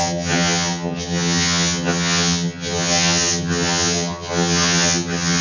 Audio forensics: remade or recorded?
remade